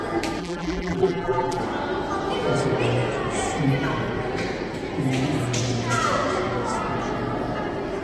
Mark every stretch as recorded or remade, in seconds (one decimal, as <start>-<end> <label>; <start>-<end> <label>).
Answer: 0.0-0.4 recorded; 0.4-1.6 remade; 1.6-8.0 recorded